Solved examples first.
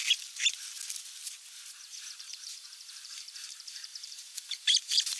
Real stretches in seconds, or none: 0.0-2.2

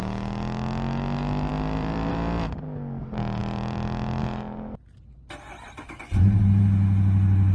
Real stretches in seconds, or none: 0.0-1.5; 2.1-3.4; 4.2-7.5

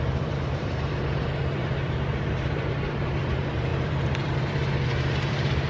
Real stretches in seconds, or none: none

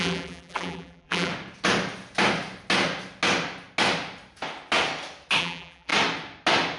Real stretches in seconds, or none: 1.3-5.4; 5.9-6.8

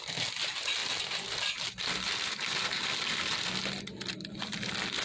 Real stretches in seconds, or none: 0.0-5.0

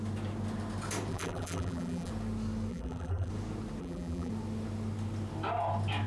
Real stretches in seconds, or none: 0.0-1.1; 2.1-2.7; 3.3-3.8; 4.3-6.1

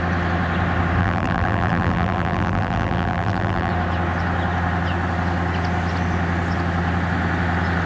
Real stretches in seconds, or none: 0.0-1.0; 3.7-7.9

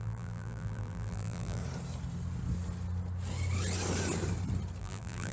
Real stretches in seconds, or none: 1.6-4.8